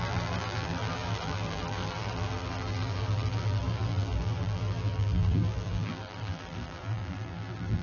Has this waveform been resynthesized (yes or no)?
yes